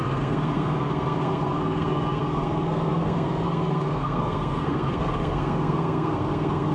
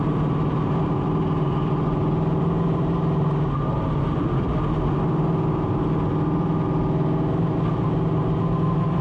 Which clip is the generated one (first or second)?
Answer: first